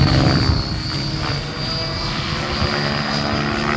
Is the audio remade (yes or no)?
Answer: no